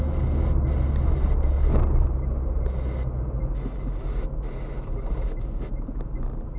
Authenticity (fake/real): real